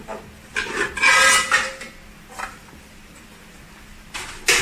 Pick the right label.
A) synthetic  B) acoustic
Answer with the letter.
B